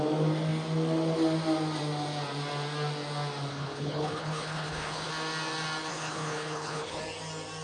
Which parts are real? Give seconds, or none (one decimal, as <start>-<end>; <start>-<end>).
0.0-3.5; 5.1-5.9; 7.0-7.6